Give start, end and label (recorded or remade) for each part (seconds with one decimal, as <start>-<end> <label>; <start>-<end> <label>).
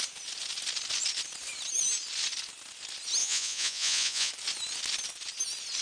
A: 0.0-3.2 recorded; 3.2-4.3 remade; 4.3-5.8 recorded